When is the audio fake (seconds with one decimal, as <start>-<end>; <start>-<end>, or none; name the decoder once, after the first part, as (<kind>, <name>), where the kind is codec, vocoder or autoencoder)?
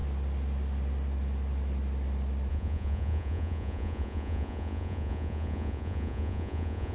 2.5-6.9 (vocoder, Vocos)